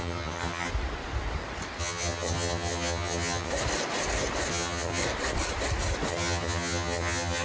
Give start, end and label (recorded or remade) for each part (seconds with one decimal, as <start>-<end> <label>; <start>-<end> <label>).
0.0-0.7 remade; 0.7-1.8 recorded; 1.8-3.5 remade; 3.5-4.5 recorded; 4.5-5.0 remade; 5.0-6.1 recorded; 6.1-7.4 remade